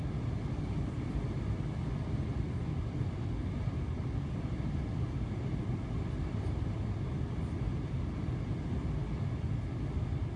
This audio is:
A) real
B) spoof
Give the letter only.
A